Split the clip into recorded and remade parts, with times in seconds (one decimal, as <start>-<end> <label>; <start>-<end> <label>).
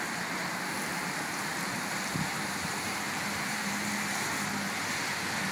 0.0-0.9 recorded; 0.9-3.9 remade; 3.9-5.5 recorded